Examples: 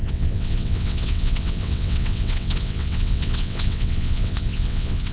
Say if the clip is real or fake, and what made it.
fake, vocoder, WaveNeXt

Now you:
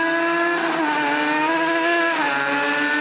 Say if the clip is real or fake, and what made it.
real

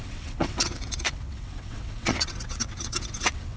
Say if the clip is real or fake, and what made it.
fake, vocoder, WaveNeXt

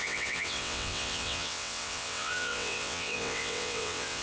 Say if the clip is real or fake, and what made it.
fake, vocoder, WaveNeXt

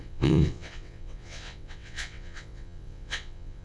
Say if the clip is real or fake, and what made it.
fake, vocoder, WaveNeXt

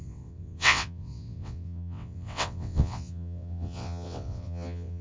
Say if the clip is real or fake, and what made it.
fake, vocoder, WaveNeXt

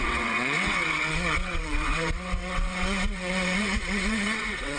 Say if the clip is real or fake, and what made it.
fake, vocoder, WaveNeXt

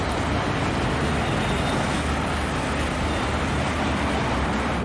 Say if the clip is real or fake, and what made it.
real